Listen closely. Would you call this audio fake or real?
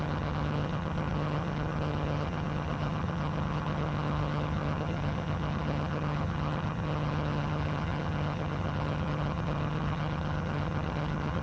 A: fake